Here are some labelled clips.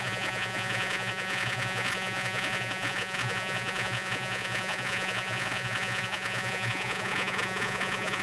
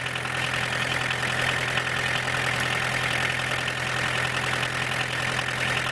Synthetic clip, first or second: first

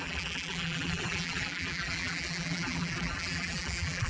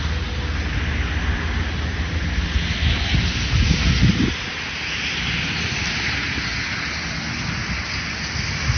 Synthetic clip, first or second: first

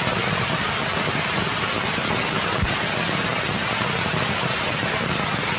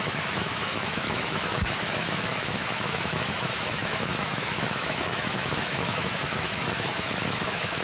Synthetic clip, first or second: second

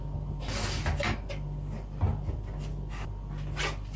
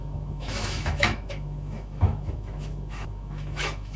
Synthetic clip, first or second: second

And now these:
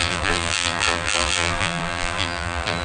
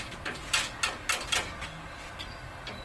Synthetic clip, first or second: first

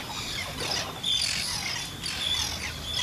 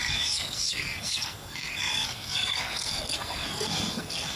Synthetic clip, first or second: second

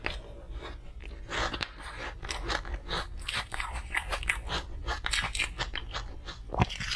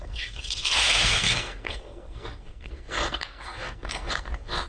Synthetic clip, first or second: second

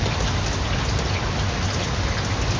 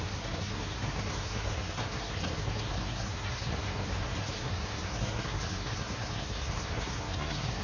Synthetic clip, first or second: second